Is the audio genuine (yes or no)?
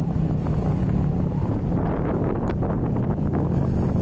yes